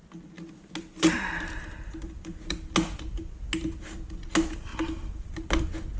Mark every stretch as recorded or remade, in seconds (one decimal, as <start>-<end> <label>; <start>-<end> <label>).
0.0-6.0 recorded